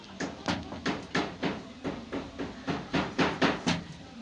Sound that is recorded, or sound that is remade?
recorded